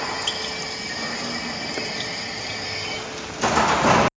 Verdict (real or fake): real